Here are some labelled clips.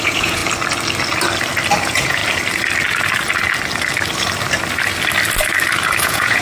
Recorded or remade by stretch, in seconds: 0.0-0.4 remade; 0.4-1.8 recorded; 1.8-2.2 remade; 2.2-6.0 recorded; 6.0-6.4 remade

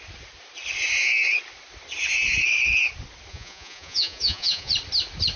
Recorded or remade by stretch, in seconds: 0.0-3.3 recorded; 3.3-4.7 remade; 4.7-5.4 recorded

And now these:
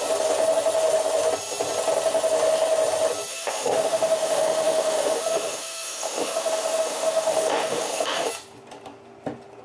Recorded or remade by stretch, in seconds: 0.0-3.3 recorded; 3.3-8.3 remade; 8.3-9.6 recorded

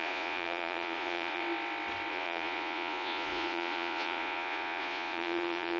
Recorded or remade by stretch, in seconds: 0.0-1.4 remade; 1.4-2.1 recorded; 2.1-5.8 remade

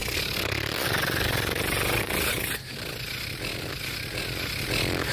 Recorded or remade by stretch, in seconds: 0.0-5.1 recorded

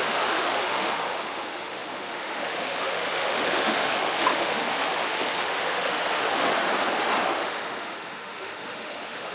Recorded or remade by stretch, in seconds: 0.0-6.6 remade; 6.6-7.2 recorded; 7.2-9.3 remade

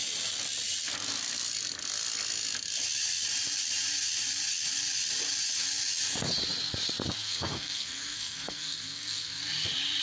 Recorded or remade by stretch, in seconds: 0.0-7.2 recorded; 7.2-9.4 remade; 9.4-10.0 recorded

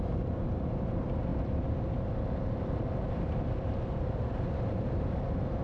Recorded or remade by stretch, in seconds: 0.0-5.6 recorded